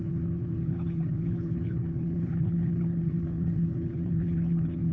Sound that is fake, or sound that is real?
fake